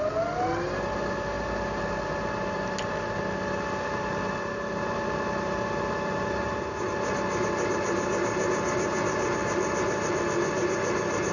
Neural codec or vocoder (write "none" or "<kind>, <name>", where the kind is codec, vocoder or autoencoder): none